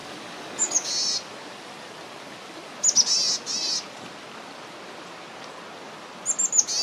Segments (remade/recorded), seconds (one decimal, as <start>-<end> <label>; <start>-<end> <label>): 0.0-0.9 remade; 0.9-6.8 recorded